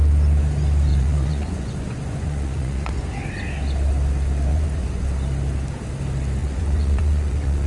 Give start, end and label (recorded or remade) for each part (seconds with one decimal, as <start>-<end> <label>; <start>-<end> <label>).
0.0-0.9 recorded; 0.9-3.2 remade; 3.2-4.5 recorded; 4.5-5.0 remade; 5.0-6.4 recorded; 6.4-7.7 remade